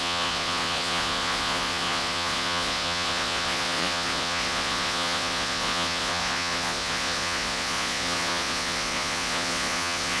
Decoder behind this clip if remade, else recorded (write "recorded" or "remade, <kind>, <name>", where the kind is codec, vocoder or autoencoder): remade, vocoder, Vocos